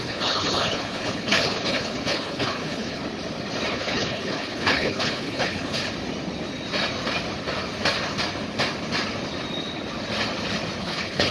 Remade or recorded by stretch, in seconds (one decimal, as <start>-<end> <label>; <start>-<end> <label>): 0.0-3.0 remade; 3.0-3.7 recorded; 3.7-5.8 remade; 5.8-10.8 recorded; 10.8-11.3 remade